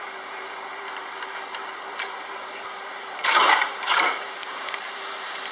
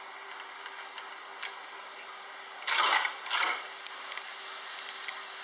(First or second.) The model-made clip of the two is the first